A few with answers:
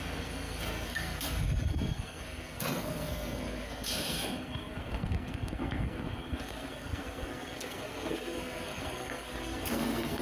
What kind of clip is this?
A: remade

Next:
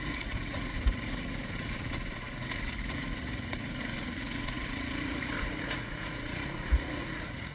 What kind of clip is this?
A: remade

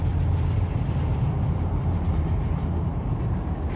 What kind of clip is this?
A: recorded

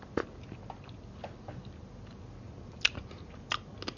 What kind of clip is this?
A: recorded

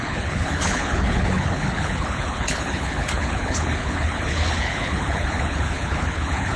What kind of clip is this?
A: remade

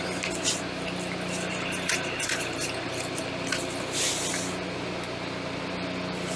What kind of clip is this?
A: recorded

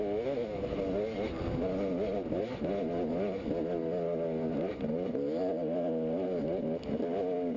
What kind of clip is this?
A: recorded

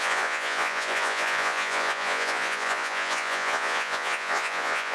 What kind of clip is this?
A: remade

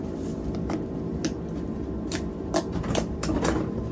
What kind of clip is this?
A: recorded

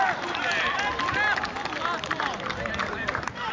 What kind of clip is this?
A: recorded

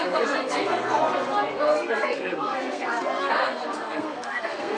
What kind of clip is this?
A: remade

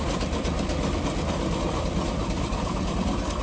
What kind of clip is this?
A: recorded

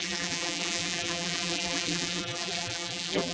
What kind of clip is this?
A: remade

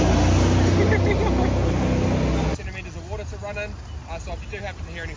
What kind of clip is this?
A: recorded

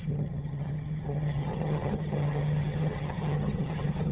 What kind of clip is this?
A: remade